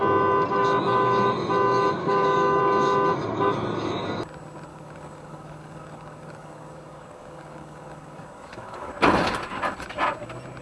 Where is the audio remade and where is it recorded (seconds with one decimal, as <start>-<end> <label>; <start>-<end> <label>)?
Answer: 0.0-2.0 recorded; 2.0-2.6 remade; 2.6-4.7 recorded; 4.7-8.9 remade; 8.9-10.6 recorded